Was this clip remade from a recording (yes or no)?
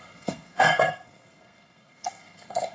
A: yes